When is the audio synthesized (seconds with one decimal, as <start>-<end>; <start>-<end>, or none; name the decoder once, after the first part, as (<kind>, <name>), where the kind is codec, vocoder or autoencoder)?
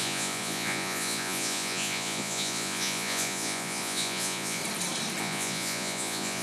0.0-4.6 (vocoder, Vocos); 5.2-6.4